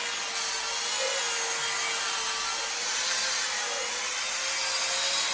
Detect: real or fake real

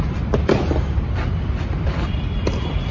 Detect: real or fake real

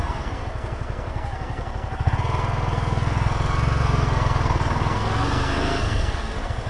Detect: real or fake fake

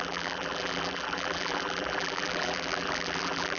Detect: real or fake fake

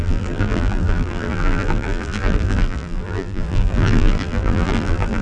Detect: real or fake fake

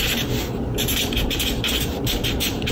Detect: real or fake fake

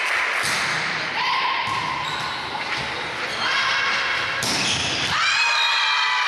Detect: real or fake real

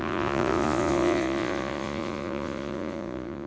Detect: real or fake fake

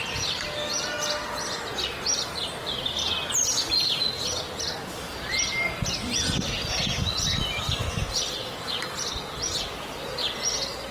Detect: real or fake real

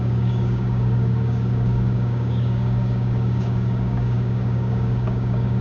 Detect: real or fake fake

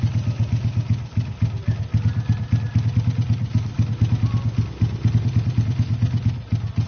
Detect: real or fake real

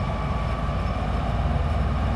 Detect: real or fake real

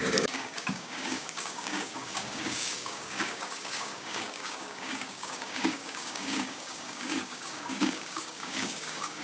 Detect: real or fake fake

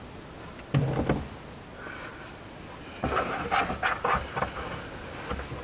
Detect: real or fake real